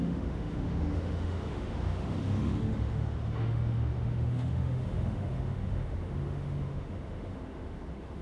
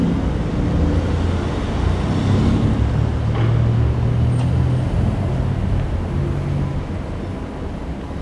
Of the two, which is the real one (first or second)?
second